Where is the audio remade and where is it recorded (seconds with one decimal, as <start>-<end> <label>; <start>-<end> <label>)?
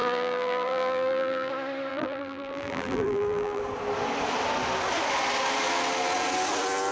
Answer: 0.0-1.5 remade; 1.5-1.9 recorded; 1.9-3.6 remade; 3.6-6.9 recorded